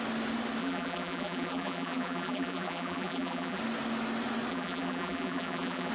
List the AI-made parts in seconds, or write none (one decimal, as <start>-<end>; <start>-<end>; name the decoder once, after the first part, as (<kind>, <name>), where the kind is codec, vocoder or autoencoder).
0.6-3.6 (vocoder, BigVGAN v2); 4.5-5.9